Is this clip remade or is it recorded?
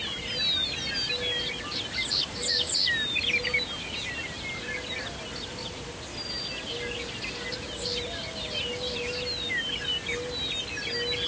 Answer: recorded